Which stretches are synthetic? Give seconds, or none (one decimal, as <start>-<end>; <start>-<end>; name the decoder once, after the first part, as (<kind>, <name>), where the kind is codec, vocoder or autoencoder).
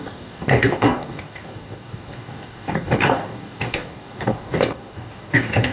0.0-5.7 (codec, DAC)